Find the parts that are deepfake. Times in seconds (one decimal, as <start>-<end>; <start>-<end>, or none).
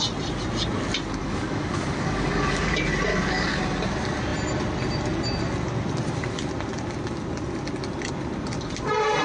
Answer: 1.2-2.7; 3.1-3.6